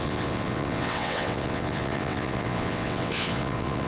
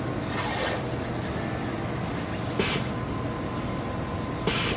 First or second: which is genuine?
second